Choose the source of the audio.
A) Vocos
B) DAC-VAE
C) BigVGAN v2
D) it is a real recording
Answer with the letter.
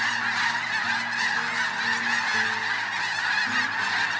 D